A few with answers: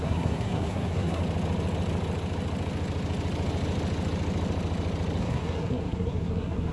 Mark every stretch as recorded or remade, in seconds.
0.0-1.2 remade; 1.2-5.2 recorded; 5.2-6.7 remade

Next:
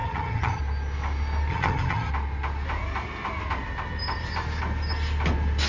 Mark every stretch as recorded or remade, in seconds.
0.0-0.6 remade; 0.6-1.5 recorded; 1.5-2.1 remade; 2.1-5.7 recorded

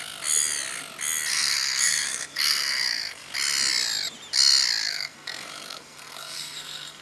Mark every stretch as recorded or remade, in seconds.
0.0-1.3 recorded; 1.3-3.3 remade; 3.3-4.8 recorded; 4.8-7.0 remade

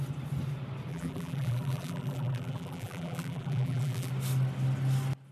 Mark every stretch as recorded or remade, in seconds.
0.0-0.9 recorded; 0.9-4.1 remade; 4.1-5.3 recorded

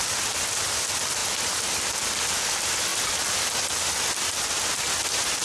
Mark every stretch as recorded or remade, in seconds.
0.0-5.4 recorded

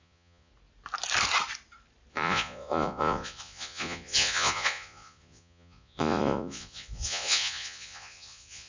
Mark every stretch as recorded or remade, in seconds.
0.0-0.5 remade; 0.5-2.1 recorded; 2.1-8.7 remade

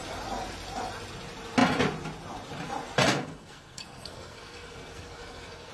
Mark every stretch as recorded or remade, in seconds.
0.0-3.1 recorded; 3.1-5.7 remade